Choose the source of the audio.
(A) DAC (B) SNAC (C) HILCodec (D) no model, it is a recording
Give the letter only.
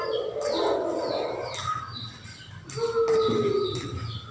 D